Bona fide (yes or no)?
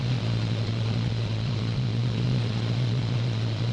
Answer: no